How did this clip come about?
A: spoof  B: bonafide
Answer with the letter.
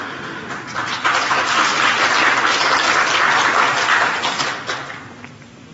B